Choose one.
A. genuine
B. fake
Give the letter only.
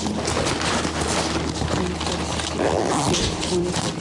A